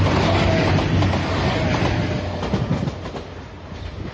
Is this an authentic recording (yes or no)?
yes